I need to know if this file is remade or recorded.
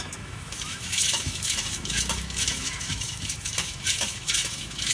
remade